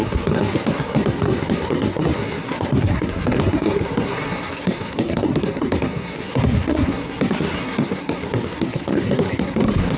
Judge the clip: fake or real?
fake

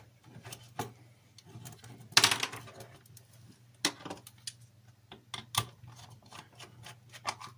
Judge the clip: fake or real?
real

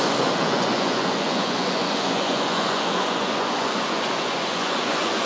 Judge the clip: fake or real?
fake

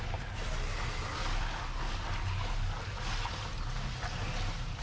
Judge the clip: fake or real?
real